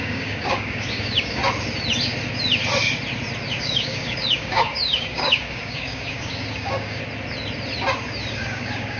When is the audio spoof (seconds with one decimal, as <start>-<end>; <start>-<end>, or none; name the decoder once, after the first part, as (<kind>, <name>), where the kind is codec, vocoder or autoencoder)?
0.0-1.4 (codec, DAC); 3.6-7.0; 8.3-9.0